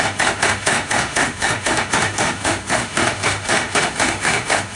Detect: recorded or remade remade